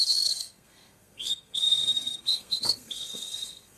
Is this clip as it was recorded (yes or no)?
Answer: no